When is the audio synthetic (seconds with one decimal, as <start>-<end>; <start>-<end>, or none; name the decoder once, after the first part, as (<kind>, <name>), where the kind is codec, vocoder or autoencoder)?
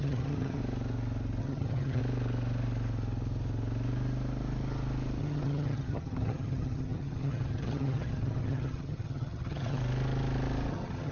0.0-0.6 (vocoder, HiFi-GAN); 1.4-2.0; 5.2-9.8; 10.7-11.1